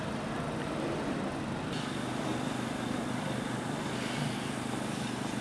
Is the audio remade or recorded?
recorded